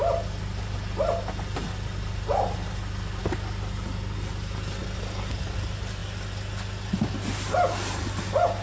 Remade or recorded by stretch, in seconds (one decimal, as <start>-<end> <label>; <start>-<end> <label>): 0.0-8.6 recorded